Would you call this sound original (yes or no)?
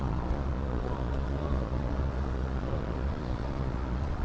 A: no